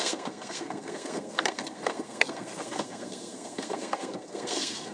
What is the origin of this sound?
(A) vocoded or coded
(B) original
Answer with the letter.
A